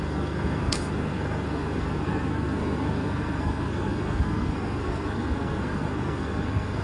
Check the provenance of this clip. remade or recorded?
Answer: remade